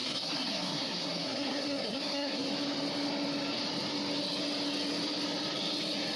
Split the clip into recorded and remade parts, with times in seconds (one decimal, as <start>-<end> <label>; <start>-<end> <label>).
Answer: 0.0-2.5 remade; 2.5-6.2 recorded